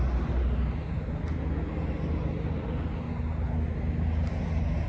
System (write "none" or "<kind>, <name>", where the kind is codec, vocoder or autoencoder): none